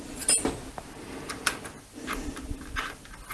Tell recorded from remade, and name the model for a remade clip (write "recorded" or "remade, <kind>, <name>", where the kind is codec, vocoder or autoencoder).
recorded